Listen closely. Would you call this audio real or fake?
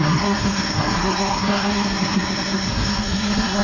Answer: fake